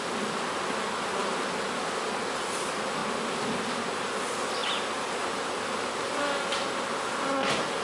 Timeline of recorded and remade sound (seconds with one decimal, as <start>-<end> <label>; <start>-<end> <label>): 0.0-7.8 recorded

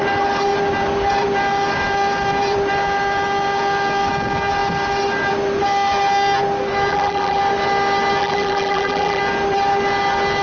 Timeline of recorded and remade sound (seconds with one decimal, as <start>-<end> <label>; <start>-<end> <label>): 0.0-6.9 recorded; 6.9-7.4 remade; 7.4-8.2 recorded; 8.2-9.2 remade; 9.2-10.4 recorded

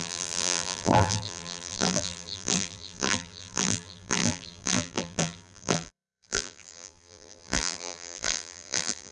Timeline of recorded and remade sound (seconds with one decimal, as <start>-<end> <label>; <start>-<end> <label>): 0.0-9.1 remade

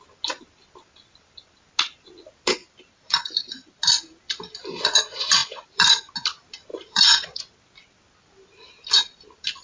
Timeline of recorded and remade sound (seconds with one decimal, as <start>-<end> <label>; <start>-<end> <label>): 0.0-2.6 recorded; 2.6-3.8 remade; 3.8-5.4 recorded; 5.4-6.1 remade; 6.1-6.7 recorded; 6.7-7.4 remade; 7.4-9.6 recorded

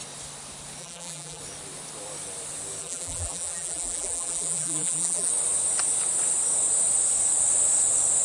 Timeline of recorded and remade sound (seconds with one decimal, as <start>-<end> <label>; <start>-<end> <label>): 0.0-0.8 recorded; 0.8-1.4 remade; 1.4-2.8 recorded; 2.8-5.3 remade; 5.3-8.2 recorded

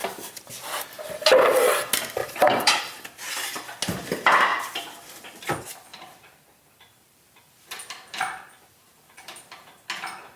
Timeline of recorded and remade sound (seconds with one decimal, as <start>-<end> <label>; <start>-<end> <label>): 0.0-0.5 remade; 0.5-2.2 recorded; 2.2-2.8 remade; 2.8-5.9 recorded; 5.9-9.4 remade; 9.4-10.4 recorded

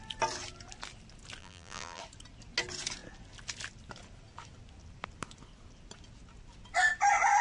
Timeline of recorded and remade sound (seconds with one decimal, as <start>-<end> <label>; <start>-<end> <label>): 0.0-1.4 recorded; 1.4-2.0 remade; 2.0-7.4 recorded